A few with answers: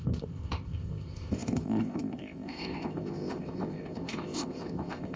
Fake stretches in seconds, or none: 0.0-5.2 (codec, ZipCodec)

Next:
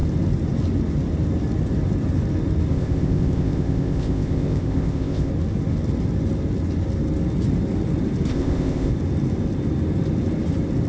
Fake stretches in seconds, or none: 2.7-5.3 (codec, ZipCodec); 8.3-8.9

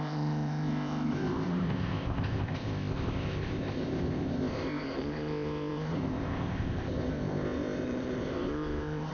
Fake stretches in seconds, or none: 0.0-9.1 (codec, ZipCodec)

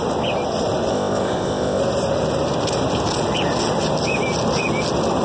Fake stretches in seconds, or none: 0.9-1.8 (codec, ZipCodec)